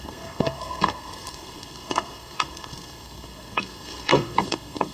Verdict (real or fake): fake